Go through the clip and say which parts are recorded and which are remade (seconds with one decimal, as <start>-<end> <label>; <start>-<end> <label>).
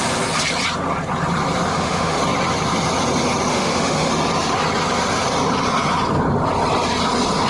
0.0-1.7 recorded; 1.7-2.2 remade; 2.2-3.5 recorded; 3.5-4.1 remade; 4.1-7.5 recorded